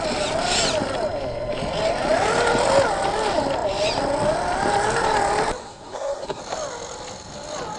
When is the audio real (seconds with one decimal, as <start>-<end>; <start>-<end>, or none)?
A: 0.0-5.6; 6.4-7.8